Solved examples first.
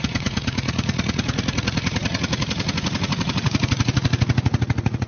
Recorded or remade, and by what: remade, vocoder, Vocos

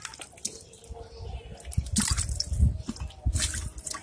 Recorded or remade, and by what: recorded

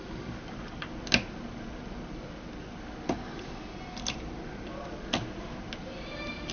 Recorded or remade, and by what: recorded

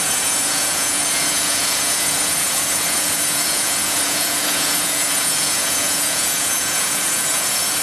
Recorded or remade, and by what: remade, vocoder, Vocos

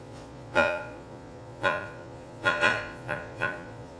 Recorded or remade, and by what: remade, vocoder, Vocos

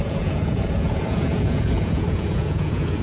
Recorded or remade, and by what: remade, vocoder, Vocos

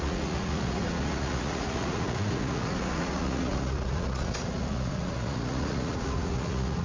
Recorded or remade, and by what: remade, vocoder, Vocos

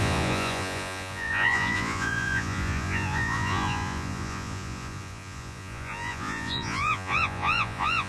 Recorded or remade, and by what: remade, vocoder, Vocos